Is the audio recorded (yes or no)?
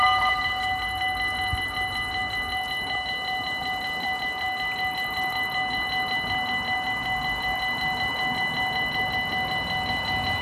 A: yes